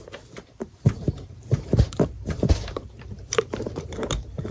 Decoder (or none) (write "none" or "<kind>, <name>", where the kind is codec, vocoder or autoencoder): vocoder, BigVGAN v2